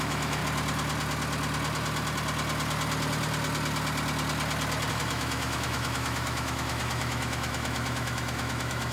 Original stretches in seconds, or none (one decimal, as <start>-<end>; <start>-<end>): 0.4-4.9